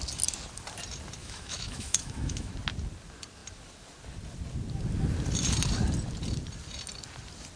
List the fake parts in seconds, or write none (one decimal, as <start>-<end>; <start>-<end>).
1.2-2.5